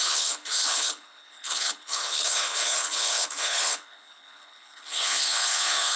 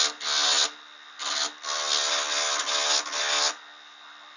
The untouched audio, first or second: second